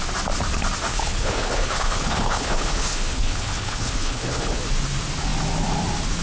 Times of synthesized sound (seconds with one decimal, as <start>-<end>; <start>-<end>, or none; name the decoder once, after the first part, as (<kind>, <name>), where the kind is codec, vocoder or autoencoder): 0.9-4.6 (codec, HILCodec)